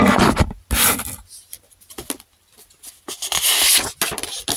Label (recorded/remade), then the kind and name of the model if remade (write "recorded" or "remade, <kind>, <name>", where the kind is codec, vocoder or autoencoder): recorded